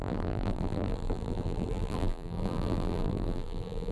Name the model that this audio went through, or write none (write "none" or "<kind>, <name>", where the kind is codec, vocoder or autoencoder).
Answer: vocoder, BigVGAN v2